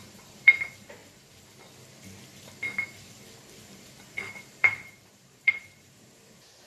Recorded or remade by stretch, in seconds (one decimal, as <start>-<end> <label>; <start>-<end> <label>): 0.0-1.0 remade; 1.0-4.5 recorded; 4.5-6.7 remade